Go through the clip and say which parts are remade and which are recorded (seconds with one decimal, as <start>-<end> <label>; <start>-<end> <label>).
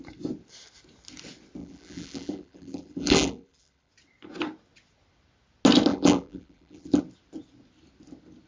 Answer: 0.0-1.6 recorded; 1.6-3.9 remade; 3.9-5.9 recorded; 5.9-7.0 remade; 7.0-8.5 recorded